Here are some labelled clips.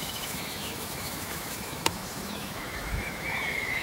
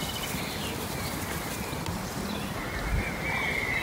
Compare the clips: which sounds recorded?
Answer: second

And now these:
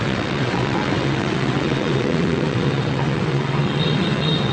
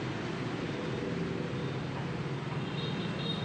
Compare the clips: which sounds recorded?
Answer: second